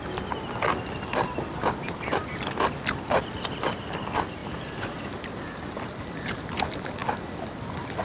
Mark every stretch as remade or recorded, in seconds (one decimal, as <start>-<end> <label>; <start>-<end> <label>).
0.0-4.4 recorded; 4.4-5.1 remade; 5.1-8.0 recorded

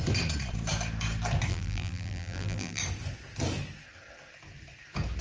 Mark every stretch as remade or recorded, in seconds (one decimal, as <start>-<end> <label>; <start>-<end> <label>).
0.0-1.5 recorded; 1.5-2.8 remade; 2.8-5.2 recorded